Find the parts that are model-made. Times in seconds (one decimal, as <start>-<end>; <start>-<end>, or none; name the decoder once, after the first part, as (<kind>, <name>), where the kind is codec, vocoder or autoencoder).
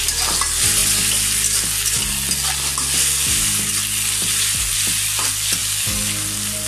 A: none